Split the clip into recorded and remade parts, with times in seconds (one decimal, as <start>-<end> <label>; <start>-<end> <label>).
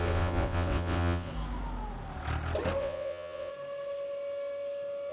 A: 0.0-1.3 remade; 1.3-2.8 recorded; 2.8-3.5 remade; 3.5-5.1 recorded